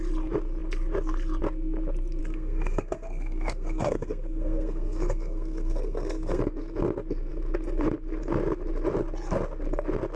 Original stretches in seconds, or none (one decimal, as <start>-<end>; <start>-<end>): 0.0-2.2; 6.4-10.2